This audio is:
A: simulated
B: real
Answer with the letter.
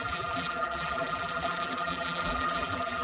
A